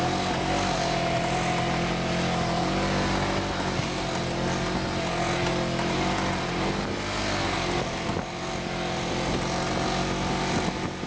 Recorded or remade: recorded